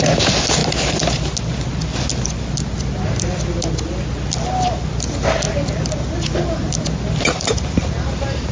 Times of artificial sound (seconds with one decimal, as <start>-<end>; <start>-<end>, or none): none